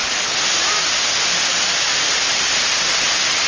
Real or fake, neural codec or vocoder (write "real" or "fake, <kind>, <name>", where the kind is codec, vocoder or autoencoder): real